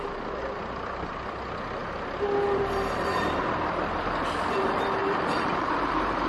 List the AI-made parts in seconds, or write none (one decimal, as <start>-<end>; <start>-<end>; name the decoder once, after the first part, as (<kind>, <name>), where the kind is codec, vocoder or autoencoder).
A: 5.0-6.3 (vocoder, BigVGAN v2)